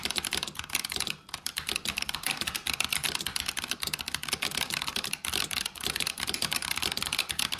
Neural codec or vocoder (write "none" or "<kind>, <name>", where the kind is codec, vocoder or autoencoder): vocoder, BigVGAN v2